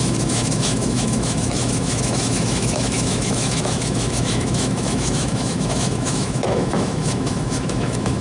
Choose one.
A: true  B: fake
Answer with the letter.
B